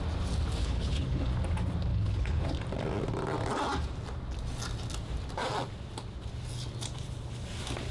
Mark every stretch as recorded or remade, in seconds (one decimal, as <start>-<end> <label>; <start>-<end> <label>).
0.0-0.6 recorded; 0.6-1.3 remade; 1.3-1.9 recorded; 1.9-2.4 remade; 2.4-7.9 recorded